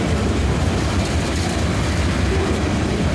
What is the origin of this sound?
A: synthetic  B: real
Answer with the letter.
B